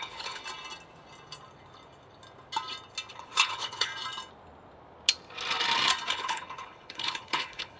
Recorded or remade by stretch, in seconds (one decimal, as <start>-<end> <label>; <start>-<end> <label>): 0.0-0.4 remade; 0.4-3.1 recorded; 3.1-3.9 remade; 3.9-6.1 recorded; 6.1-7.8 remade